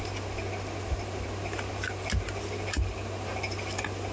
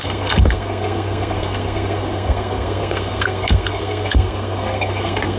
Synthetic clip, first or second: second